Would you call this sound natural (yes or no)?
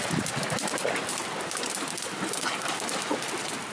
yes